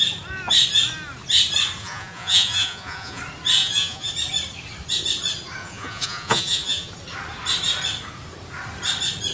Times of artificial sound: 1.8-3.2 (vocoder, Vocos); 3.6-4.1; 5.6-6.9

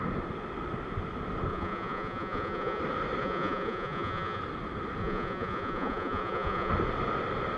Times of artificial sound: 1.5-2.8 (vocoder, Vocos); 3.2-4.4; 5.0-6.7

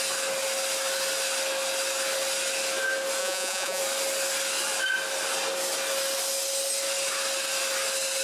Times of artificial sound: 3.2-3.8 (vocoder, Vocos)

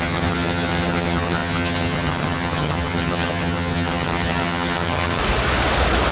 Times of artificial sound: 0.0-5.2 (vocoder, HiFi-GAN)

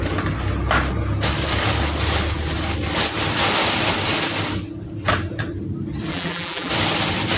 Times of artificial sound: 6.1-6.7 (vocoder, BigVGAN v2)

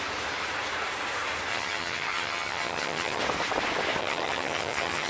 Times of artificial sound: 1.5-3.2 (vocoder, HiFi-GAN); 4.0-5.1